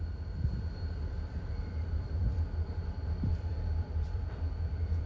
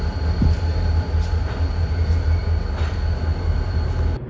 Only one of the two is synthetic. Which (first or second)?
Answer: first